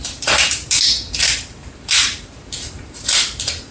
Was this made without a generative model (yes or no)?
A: no